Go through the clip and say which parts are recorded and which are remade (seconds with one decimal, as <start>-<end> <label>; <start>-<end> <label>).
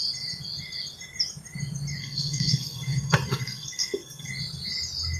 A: 0.0-2.0 recorded; 2.0-4.3 remade; 4.3-5.2 recorded